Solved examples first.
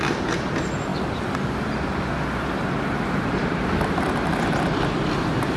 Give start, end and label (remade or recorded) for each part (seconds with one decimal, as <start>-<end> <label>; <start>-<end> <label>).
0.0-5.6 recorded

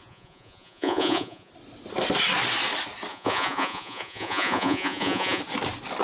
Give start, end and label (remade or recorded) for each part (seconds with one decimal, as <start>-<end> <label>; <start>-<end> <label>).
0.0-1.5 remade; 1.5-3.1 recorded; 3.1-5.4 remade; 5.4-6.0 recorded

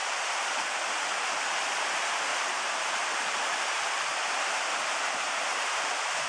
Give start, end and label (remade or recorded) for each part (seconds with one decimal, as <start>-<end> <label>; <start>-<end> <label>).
0.0-2.3 recorded; 2.3-6.3 remade

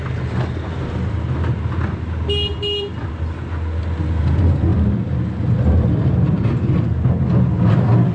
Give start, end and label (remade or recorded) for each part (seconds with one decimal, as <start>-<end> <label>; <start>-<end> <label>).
0.0-4.7 recorded; 4.7-6.5 remade; 6.5-8.1 recorded

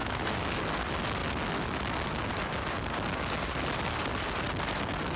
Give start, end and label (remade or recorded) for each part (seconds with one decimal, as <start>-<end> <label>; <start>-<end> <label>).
0.0-0.6 remade; 0.6-5.2 recorded

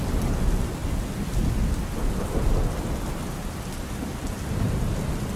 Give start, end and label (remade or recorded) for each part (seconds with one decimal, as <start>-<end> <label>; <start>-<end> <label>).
0.0-5.4 recorded

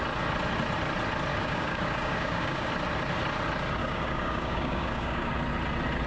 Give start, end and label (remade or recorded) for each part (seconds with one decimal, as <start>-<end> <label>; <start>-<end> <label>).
0.0-1.3 recorded; 1.3-2.7 remade; 2.7-3.8 recorded; 3.8-5.3 remade; 5.3-6.1 recorded